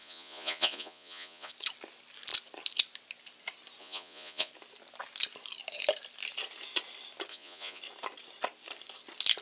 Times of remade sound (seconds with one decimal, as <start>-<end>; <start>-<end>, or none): 0.0-1.5; 3.8-4.5; 7.3-7.8